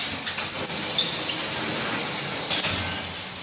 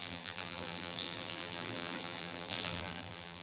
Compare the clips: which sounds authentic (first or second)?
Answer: first